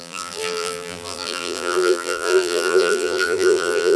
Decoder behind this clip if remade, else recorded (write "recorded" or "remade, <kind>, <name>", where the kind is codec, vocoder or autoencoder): remade, vocoder, BigVGAN v2